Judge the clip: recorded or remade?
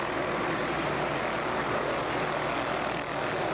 recorded